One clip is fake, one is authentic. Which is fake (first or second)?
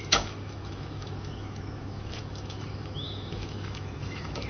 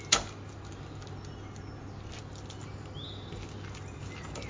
first